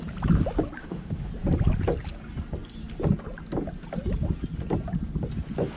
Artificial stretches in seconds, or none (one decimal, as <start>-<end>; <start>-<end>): 0.8-1.3